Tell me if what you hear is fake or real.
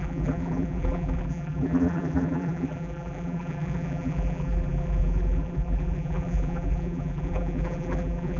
fake